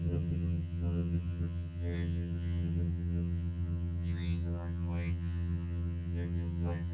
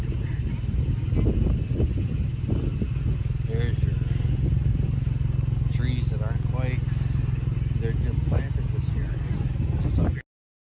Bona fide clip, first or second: second